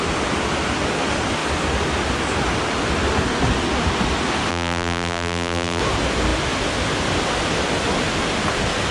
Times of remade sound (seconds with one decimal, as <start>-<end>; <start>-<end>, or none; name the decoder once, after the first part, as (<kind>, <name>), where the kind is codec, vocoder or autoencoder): 4.5-5.8 (vocoder, BigVGAN v2)